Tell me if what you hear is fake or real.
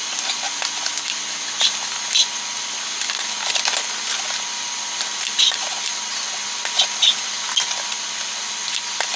real